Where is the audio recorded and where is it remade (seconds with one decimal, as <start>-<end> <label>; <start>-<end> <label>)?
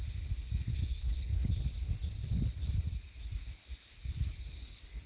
0.0-0.7 recorded; 0.7-1.5 remade; 1.5-5.1 recorded